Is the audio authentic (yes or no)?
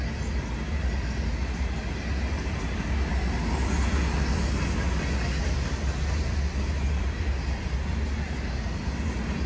yes